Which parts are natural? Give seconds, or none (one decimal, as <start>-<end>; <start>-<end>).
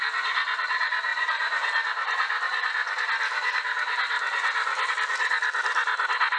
0.0-6.4